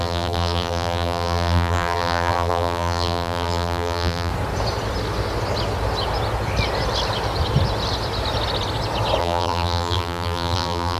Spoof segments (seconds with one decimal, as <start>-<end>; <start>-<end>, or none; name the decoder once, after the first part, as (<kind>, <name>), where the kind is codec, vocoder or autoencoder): 0.0-4.3 (vocoder, BigVGAN v2); 9.2-11.0